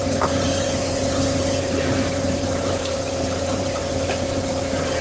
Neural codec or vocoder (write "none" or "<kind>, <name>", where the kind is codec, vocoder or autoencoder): vocoder, BigVGAN v2